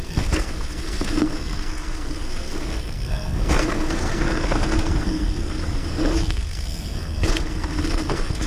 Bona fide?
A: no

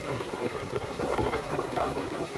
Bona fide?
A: no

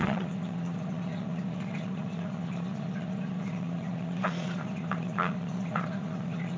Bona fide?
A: no